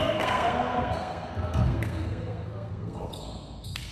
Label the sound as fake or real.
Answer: fake